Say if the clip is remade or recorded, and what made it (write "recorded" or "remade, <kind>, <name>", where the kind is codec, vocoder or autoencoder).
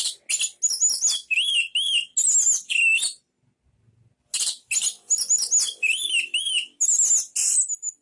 recorded